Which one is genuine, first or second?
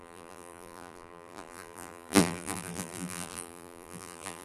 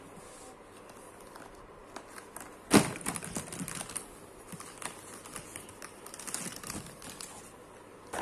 second